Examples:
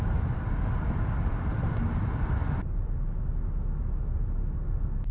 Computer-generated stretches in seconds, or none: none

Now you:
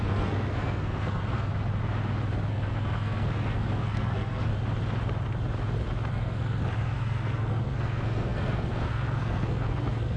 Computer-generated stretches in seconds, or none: 0.0-1.5 (codec, SNAC); 2.5-4.5; 6.1-10.2

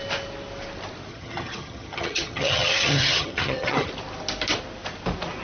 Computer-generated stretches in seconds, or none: 1.1-3.9 (vocoder, HiFi-GAN)

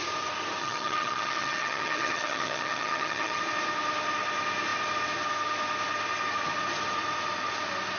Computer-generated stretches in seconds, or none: 0.6-3.4 (vocoder, HiFi-GAN)

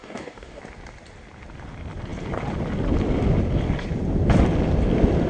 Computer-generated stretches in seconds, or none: 0.0-0.6 (codec, DAC)

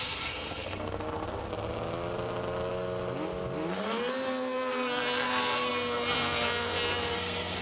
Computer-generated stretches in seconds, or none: 0.0-1.5 (codec, SNAC); 3.7-7.6

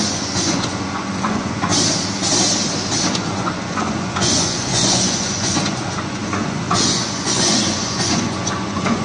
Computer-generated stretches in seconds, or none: 0.0-1.7 (vocoder, Vocos); 3.1-9.0